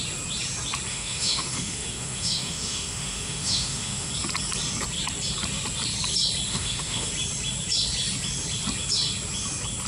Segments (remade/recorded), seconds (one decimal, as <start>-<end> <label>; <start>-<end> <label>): 0.0-0.9 recorded; 0.9-4.1 remade; 4.1-6.5 recorded; 6.5-7.1 remade; 7.1-9.9 recorded